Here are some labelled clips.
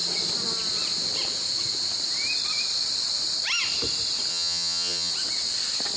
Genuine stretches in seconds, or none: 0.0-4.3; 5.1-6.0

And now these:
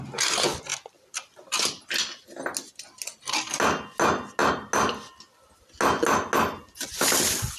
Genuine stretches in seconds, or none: 0.0-7.6

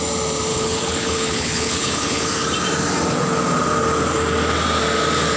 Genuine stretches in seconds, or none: 0.0-0.5; 2.3-5.4

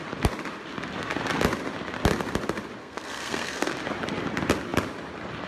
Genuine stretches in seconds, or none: 0.0-2.8; 3.7-5.5